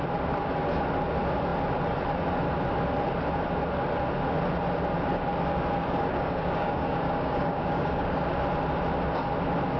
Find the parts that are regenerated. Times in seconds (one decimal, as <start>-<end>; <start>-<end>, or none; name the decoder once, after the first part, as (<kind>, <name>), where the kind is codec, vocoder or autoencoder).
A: 5.8-8.3 (codec, DAC)

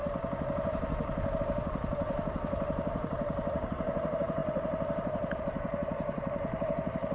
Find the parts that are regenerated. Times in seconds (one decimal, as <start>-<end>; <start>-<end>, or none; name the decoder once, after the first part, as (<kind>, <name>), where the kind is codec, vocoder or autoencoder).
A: 1.4-7.1 (vocoder, BigVGAN v2)

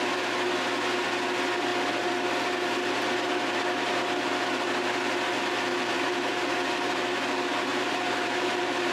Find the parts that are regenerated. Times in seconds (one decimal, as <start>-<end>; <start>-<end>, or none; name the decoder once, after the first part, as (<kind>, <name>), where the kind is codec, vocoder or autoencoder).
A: 5.7-6.3 (vocoder, BigVGAN v2); 7.7-8.9

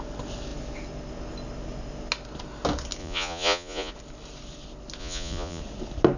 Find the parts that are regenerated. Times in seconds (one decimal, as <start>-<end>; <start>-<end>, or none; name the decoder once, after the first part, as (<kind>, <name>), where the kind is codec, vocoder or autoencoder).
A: 3.0-3.9 (vocoder, Vocos); 5.0-5.6

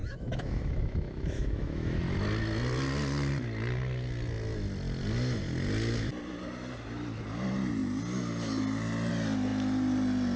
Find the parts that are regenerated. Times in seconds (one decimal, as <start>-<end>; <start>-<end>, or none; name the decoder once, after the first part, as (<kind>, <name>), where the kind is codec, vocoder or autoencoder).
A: 0.0-2.0 (autoencoder, DAC-VAE)

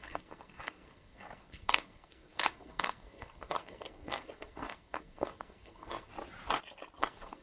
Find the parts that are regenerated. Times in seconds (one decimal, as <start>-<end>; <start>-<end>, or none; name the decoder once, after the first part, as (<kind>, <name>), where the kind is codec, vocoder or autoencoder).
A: 0.0-6.1 (codec, SNAC); 7.0-7.4

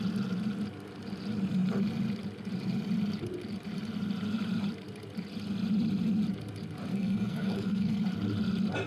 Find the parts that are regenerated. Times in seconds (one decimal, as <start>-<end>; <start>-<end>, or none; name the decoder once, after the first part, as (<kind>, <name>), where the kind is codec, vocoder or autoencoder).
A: 6.9-8.0 (codec, SNAC)

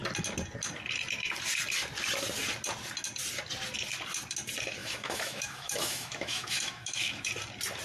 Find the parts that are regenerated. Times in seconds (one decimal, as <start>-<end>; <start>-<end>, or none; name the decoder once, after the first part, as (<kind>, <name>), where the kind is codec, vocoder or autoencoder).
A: 4.8-7.3 (autoencoder, DAC-VAE)